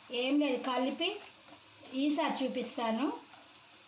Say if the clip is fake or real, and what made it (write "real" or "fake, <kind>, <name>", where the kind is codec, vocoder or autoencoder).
real